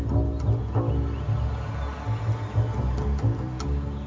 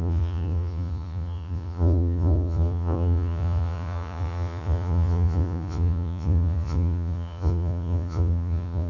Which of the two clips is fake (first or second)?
second